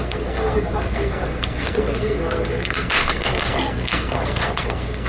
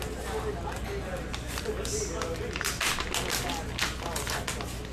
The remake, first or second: first